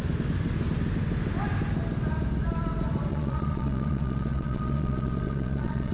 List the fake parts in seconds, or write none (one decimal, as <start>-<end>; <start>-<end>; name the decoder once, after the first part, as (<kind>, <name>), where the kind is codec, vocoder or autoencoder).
3.1-5.9 (vocoder, Vocos)